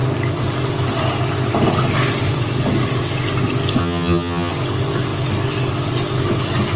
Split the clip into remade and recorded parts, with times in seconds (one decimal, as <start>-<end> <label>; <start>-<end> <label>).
0.0-3.8 recorded; 3.8-4.5 remade; 4.5-6.8 recorded